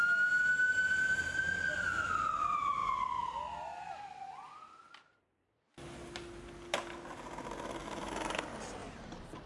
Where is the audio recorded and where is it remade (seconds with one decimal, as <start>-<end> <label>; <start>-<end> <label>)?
0.0-7.8 recorded; 7.8-8.4 remade; 8.4-8.8 recorded; 8.8-9.5 remade